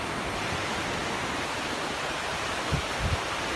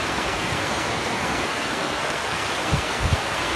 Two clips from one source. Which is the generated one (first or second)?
second